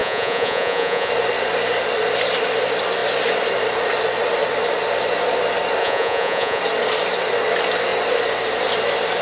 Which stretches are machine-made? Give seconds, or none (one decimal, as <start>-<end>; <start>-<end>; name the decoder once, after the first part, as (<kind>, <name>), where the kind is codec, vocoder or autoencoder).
0.0-1.1 (vocoder, Vocos); 5.8-6.6